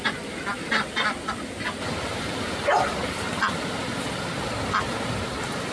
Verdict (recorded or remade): recorded